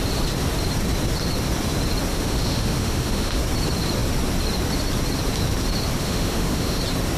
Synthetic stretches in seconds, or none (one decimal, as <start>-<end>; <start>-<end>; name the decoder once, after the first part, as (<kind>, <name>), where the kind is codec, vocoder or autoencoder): 2.1-3.4 (autoencoder, DAC-VAE); 6.0-6.8